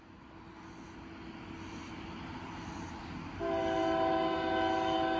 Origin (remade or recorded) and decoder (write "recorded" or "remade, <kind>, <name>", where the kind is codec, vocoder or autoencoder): recorded